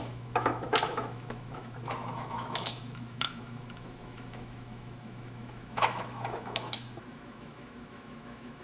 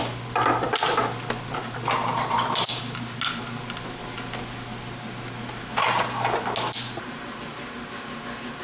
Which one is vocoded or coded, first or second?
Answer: first